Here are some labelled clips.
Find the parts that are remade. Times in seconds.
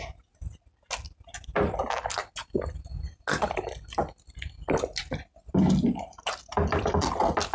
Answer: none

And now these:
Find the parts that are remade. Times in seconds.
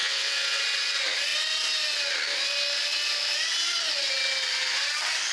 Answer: 0.0-0.6 (vocoder, WaveNeXt)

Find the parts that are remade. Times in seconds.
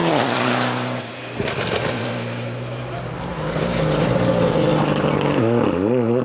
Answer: none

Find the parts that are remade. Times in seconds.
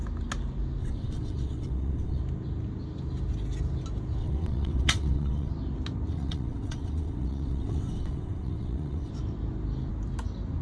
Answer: 0.8-2.2 (vocoder, WaveNeXt); 4.2-5.5; 6.1-9.1